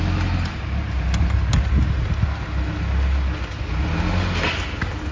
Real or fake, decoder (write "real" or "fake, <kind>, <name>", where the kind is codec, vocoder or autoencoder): real